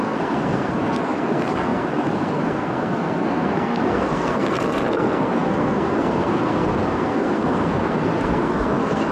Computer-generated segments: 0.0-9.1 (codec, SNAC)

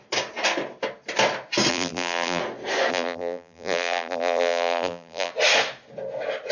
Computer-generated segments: 1.7-2.4 (vocoder, BigVGAN v2); 2.9-5.3

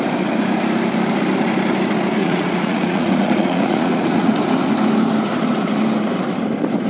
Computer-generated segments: 2.2-4.3 (vocoder, Vocos)

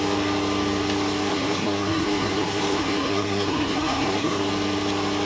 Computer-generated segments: 1.3-4.5 (codec, SNAC)

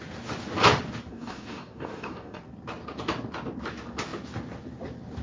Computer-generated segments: 1.1-2.4 (codec, DAC)

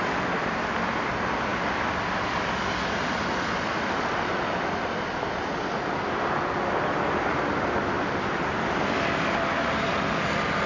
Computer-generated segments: none